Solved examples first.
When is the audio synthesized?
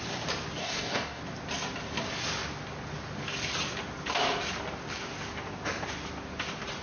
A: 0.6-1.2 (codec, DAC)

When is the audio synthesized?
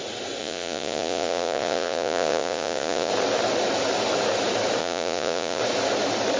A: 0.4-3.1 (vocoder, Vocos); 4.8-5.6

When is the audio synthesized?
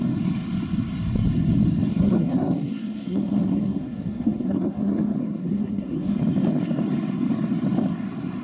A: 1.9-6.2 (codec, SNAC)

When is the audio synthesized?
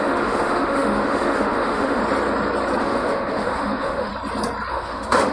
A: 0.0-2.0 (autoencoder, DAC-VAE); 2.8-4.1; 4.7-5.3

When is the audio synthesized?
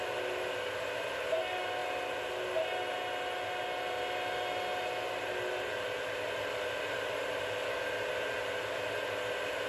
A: none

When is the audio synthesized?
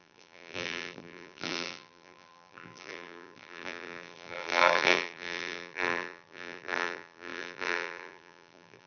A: 0.0-8.9 (vocoder, BigVGAN v2)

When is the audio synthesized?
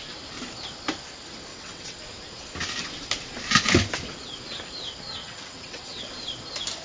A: 1.5-2.0 (vocoder, WaveNeXt); 5.2-6.0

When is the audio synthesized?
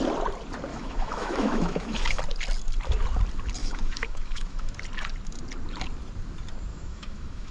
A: 0.7-2.2 (autoencoder, DAC-VAE); 3.6-4.7; 6.7-7.5